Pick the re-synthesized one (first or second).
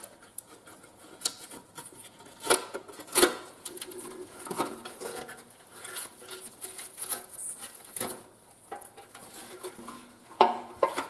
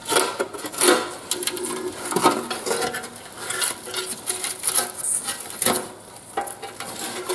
first